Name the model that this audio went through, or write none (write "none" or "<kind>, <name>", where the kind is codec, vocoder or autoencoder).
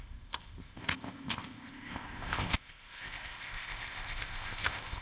codec, ZipCodec